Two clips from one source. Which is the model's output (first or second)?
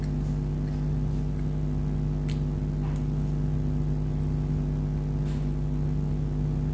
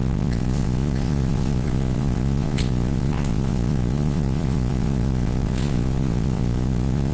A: second